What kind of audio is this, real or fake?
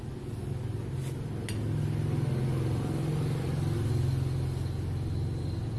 real